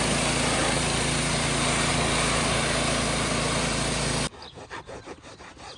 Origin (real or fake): real